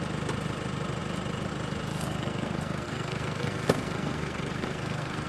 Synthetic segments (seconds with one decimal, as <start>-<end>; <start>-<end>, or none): 1.9-5.3